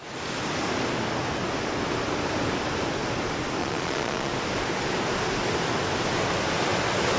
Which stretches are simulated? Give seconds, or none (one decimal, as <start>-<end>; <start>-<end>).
3.6-4.3